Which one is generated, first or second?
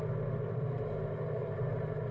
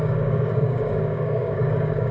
second